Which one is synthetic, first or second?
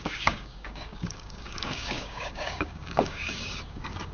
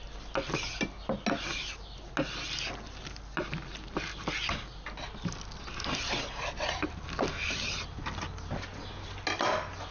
first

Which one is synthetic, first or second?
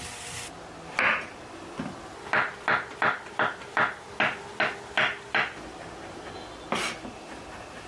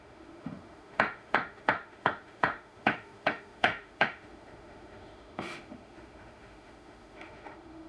second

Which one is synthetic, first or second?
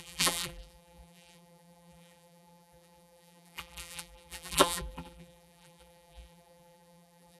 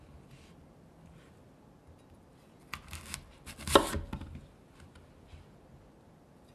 first